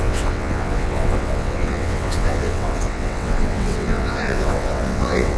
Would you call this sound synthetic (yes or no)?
yes